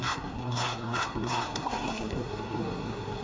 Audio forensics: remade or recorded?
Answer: remade